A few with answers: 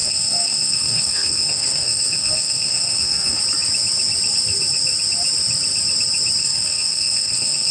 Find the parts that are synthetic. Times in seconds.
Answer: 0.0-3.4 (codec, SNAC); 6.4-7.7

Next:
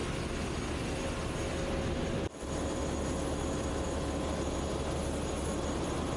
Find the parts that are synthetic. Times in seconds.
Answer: none

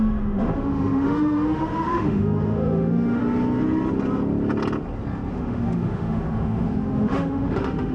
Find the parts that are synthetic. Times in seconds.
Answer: 0.0-3.2 (autoencoder, DAC-VAE); 5.3-7.9